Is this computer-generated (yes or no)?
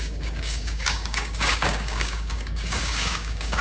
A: yes